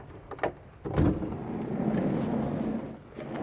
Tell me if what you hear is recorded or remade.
recorded